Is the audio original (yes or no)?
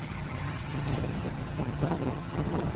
no